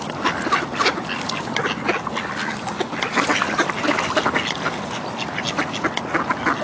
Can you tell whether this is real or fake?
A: real